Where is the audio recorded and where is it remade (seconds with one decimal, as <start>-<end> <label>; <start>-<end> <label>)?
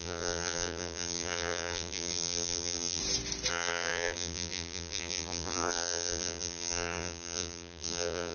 0.0-3.0 remade; 3.0-3.5 recorded; 3.5-8.3 remade